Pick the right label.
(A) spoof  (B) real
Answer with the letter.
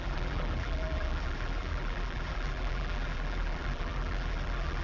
A